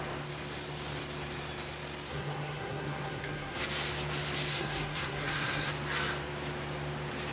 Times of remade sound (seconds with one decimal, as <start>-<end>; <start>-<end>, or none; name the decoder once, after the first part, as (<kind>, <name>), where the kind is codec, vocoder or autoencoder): 2.1-3.6 (codec, SNAC); 4.5-5.7